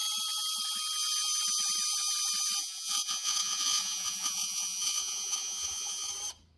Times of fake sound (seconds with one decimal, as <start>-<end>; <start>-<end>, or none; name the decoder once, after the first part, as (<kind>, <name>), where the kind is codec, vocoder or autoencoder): 2.6-6.1 (vocoder, Vocos)